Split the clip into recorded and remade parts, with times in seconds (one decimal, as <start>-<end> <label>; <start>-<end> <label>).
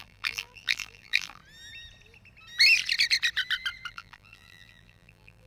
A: 0.0-1.4 remade; 1.4-3.9 recorded; 3.9-5.5 remade